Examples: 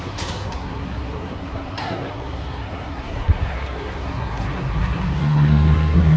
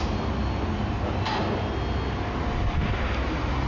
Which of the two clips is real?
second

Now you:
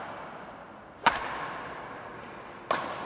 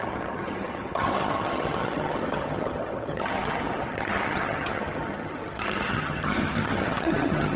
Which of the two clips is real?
first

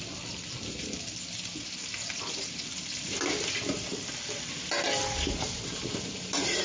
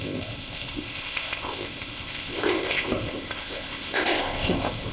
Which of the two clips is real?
first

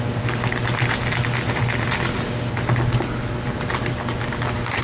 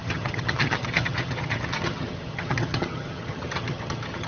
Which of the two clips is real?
first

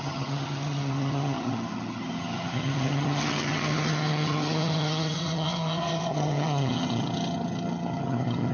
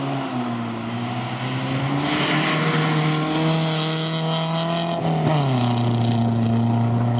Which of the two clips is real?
second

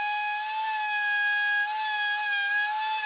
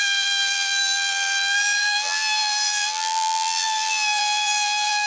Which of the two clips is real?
first